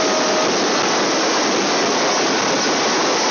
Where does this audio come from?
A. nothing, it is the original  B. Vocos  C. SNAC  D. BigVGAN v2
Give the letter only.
A